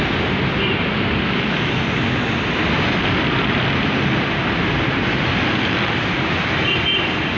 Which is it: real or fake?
real